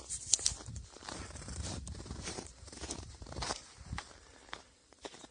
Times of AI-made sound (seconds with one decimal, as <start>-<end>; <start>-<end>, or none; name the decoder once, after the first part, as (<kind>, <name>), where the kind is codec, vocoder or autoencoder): 0.7-3.9 (vocoder, BigVGAN v2)